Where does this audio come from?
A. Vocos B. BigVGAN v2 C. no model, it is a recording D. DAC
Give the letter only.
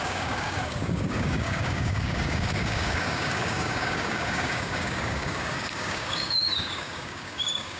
D